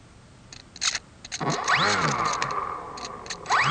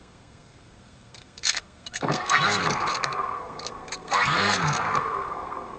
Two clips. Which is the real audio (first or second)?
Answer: first